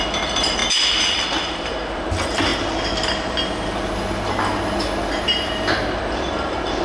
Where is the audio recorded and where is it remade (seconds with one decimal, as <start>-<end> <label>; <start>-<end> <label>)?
0.0-6.8 recorded